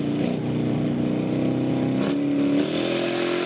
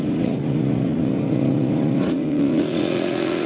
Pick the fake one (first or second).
second